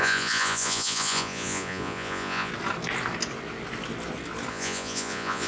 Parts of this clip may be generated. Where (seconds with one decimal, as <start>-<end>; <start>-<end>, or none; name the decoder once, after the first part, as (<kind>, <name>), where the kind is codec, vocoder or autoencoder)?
0.0-2.5 (vocoder, Vocos); 4.5-5.5